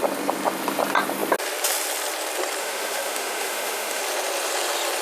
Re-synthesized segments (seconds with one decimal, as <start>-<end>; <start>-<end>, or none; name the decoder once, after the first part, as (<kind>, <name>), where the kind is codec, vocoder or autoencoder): 2.6-4.0 (autoencoder, DAC-VAE)